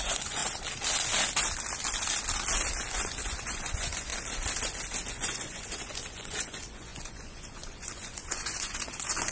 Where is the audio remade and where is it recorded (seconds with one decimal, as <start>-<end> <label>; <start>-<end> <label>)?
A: 0.0-0.4 remade; 0.4-2.9 recorded; 2.9-4.1 remade; 4.1-5.1 recorded; 5.1-9.3 remade